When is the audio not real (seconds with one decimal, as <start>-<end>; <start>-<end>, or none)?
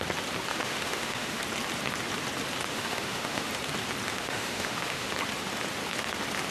0.5-1.4; 2.7-3.5; 4.1-5.1